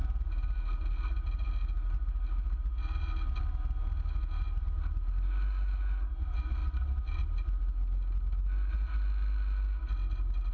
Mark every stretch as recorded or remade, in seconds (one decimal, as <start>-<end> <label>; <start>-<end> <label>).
0.0-10.5 recorded